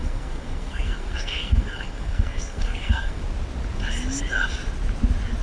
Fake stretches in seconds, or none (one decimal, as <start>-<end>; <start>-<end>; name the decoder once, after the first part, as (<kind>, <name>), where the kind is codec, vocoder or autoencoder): 0.0-3.2 (codec, SNAC)